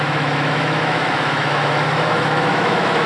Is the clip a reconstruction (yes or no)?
yes